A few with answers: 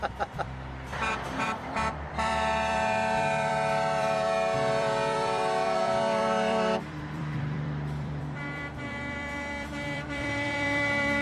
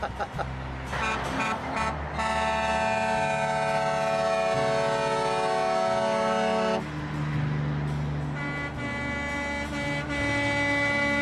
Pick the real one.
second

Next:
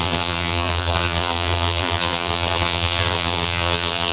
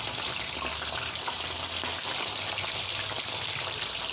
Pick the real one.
second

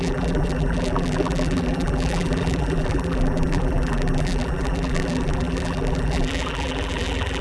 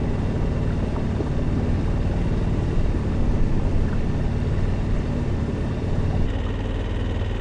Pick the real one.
second